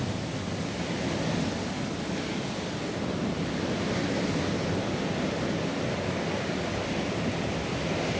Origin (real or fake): real